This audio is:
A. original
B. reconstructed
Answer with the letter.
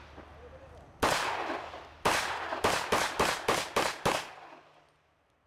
A